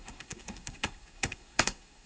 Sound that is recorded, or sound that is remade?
remade